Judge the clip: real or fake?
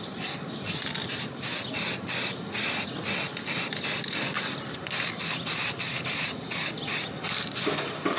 real